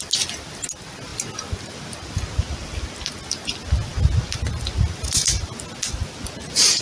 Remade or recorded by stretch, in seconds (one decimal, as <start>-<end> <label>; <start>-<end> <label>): 0.0-6.8 recorded